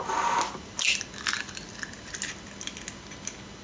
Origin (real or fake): real